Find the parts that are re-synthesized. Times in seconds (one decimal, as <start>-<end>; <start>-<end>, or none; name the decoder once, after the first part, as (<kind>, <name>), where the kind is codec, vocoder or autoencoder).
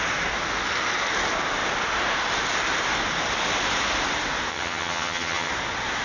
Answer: 4.5-5.5 (vocoder, HiFi-GAN)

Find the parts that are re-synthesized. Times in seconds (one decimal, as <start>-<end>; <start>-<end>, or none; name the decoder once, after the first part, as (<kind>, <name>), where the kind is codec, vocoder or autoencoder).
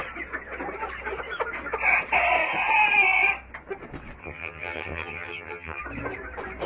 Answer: 4.2-5.8 (vocoder, HiFi-GAN)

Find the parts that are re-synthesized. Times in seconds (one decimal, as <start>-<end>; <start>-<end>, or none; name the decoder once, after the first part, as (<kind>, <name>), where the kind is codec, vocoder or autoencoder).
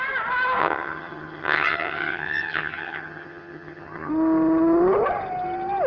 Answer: 0.6-4.1 (vocoder, HiFi-GAN)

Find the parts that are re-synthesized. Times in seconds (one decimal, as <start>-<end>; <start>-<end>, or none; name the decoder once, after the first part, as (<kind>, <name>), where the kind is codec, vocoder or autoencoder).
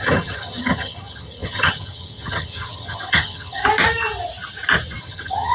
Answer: 0.0-3.6 (vocoder, HiFi-GAN); 5.0-5.5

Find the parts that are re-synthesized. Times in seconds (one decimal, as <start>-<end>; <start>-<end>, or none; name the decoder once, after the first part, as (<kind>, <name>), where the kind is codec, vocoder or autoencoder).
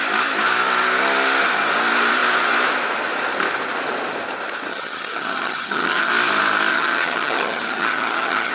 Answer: 4.7-6.1 (vocoder, HiFi-GAN); 6.7-8.5